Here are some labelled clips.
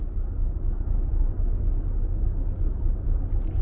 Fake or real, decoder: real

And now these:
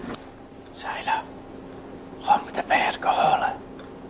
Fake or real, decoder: real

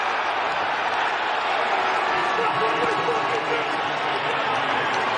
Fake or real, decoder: real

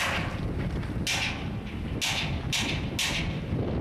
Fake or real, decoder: real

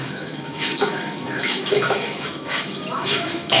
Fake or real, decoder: fake, autoencoder, DAC-VAE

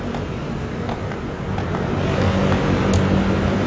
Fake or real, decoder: real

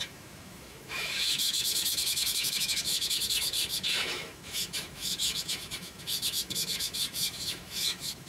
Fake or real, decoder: fake, autoencoder, DAC-VAE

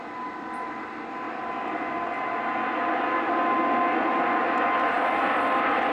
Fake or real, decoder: real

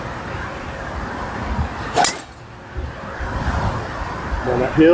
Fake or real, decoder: real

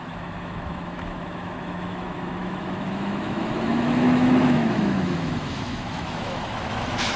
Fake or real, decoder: fake, autoencoder, DAC-VAE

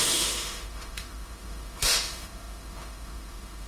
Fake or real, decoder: fake, autoencoder, DAC-VAE